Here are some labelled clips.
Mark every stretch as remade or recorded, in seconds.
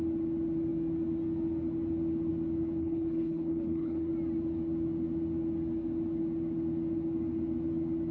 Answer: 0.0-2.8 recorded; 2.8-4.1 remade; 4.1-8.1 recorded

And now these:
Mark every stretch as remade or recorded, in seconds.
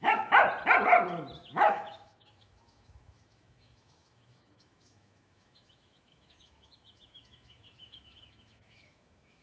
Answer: 0.0-0.4 remade; 0.4-1.4 recorded; 1.4-9.4 remade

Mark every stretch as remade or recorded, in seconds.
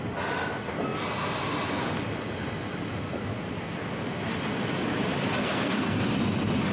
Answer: 0.0-5.4 recorded; 5.4-6.1 remade; 6.1-6.7 recorded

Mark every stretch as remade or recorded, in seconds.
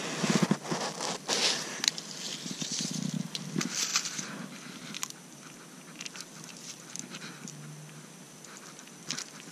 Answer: 0.0-9.5 recorded